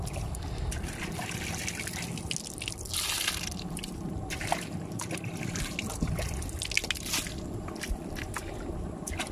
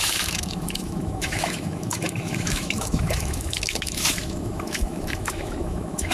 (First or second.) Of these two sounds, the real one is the first